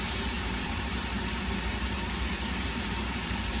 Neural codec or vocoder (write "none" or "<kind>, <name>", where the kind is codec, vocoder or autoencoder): vocoder, BigVGAN v2